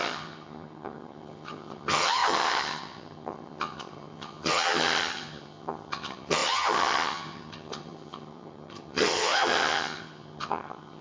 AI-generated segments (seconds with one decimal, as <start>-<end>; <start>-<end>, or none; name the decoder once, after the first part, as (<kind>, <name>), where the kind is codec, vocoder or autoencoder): 0.0-11.0 (vocoder, HiFi-GAN)